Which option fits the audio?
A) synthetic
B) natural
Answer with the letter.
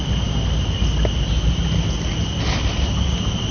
B